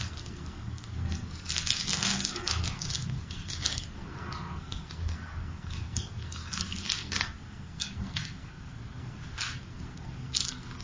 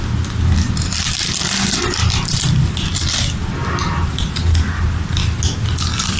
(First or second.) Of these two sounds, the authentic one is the second